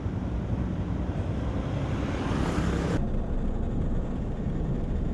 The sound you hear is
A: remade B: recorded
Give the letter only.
B